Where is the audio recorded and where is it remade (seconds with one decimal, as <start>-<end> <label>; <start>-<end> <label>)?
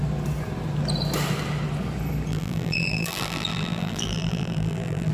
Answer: 0.0-2.3 recorded; 2.3-5.1 remade